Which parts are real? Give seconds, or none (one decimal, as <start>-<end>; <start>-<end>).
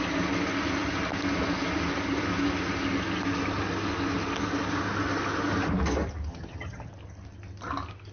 0.0-6.3; 6.9-8.1